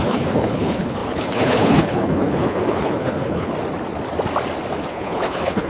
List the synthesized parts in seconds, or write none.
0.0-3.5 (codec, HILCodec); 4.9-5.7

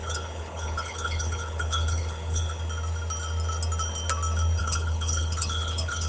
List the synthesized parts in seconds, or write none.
0.0-2.6 (codec, HILCodec); 4.6-6.1

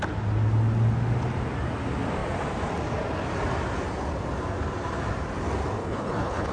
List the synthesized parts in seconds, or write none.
5.8-6.5 (codec, HILCodec)

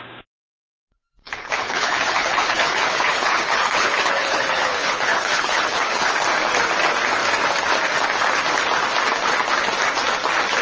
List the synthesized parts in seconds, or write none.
1.2-6.2 (codec, HILCodec)